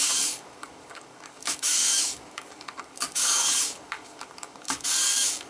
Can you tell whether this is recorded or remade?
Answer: remade